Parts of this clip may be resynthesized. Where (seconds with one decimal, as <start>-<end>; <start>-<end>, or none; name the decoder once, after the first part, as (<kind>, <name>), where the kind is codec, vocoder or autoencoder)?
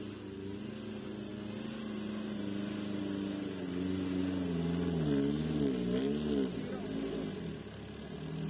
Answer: none